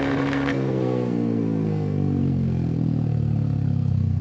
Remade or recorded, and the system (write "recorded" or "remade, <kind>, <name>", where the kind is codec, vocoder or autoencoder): remade, codec, SNAC